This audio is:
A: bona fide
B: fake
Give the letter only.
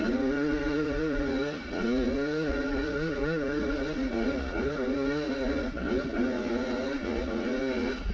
B